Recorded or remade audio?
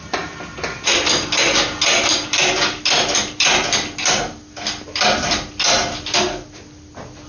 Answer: recorded